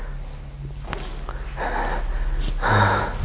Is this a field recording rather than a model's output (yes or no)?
yes